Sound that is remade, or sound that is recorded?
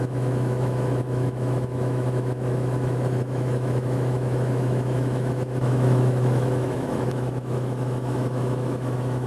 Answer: remade